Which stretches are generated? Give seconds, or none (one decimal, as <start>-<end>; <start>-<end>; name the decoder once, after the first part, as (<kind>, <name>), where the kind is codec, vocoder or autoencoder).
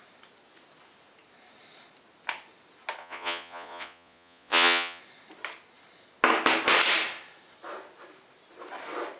3.0-5.0 (vocoder, Vocos)